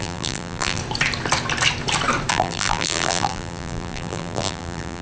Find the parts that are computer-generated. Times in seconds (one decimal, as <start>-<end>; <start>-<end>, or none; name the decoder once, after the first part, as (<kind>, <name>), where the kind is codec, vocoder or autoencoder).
0.0-0.8 (vocoder, BigVGAN v2); 2.3-5.0